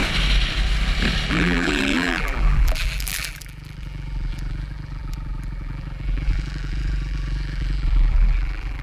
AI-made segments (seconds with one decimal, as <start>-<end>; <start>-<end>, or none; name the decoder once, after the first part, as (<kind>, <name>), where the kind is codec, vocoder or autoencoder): 1.3-8.8 (vocoder, BigVGAN v2)